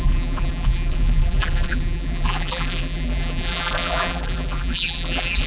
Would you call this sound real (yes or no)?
no